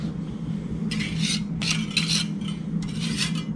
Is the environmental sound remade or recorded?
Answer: recorded